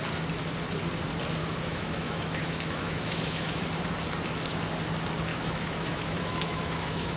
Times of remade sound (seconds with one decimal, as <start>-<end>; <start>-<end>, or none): 1.4-3.6; 5.3-7.2